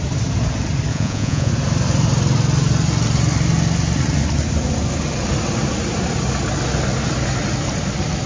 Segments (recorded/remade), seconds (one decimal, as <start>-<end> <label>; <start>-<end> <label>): 0.0-0.9 recorded; 0.9-1.5 remade; 1.5-8.3 recorded

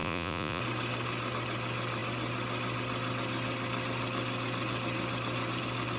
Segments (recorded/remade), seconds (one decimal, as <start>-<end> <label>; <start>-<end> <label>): 0.0-0.6 remade; 0.6-6.0 recorded

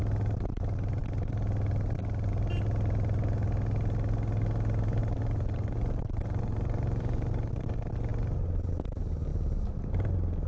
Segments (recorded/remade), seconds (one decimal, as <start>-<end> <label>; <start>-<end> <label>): 0.0-5.0 recorded; 5.0-7.3 remade; 7.3-10.5 recorded

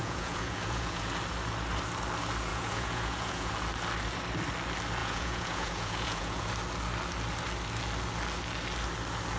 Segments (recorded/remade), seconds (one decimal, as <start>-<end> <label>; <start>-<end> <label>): 0.0-1.1 remade; 1.1-2.5 recorded; 2.5-3.5 remade; 3.5-5.0 recorded; 5.0-6.5 remade; 6.5-9.4 recorded